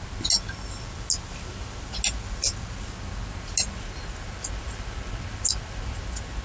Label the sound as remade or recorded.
recorded